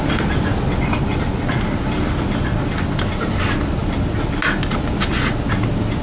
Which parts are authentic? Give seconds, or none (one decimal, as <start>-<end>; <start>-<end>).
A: 0.0-6.0